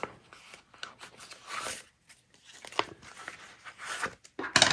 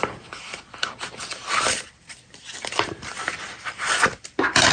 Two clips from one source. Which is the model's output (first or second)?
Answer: second